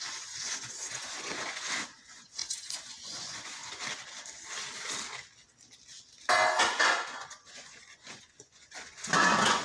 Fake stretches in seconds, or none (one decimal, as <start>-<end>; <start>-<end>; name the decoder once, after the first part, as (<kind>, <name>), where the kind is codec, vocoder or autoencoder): 0.0-3.6 (vocoder, Vocos); 6.6-9.6